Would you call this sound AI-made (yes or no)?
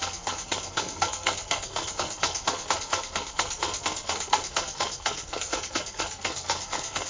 yes